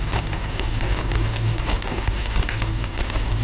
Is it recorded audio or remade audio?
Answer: remade